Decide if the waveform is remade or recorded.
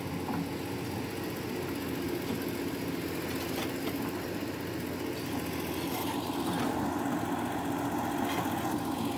recorded